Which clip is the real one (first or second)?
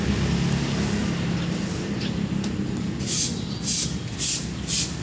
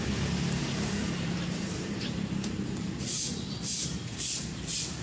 first